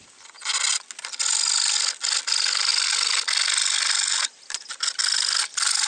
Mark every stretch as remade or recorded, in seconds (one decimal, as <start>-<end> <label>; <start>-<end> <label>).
0.0-5.9 recorded